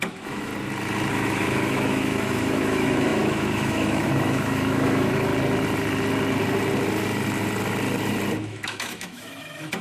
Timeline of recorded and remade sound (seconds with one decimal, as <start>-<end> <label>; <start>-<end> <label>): 0.0-0.5 remade; 0.5-1.1 recorded; 1.1-5.3 remade; 5.3-8.4 recorded; 8.4-9.8 remade